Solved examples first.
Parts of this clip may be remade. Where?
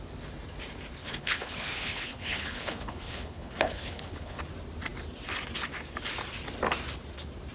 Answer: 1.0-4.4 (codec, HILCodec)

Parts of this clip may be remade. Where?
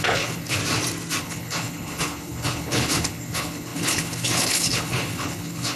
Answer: 0.0-0.6 (codec, HILCodec); 1.2-5.8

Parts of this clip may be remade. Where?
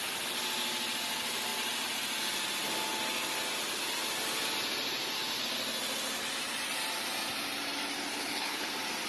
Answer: 8.1-8.7 (codec, HILCodec)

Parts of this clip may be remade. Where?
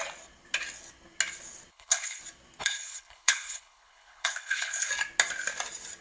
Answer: 1.7-2.2 (codec, HILCodec); 2.6-4.9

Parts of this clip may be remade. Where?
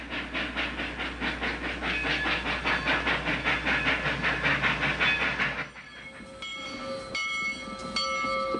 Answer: none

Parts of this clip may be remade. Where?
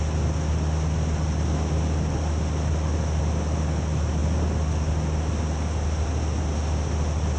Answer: none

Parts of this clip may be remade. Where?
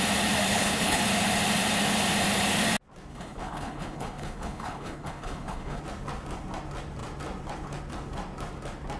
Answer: 0.5-1.0 (codec, HILCodec); 3.1-5.8